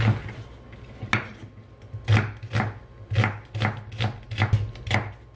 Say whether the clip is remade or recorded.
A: recorded